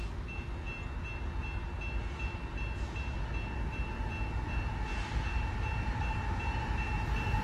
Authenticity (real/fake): real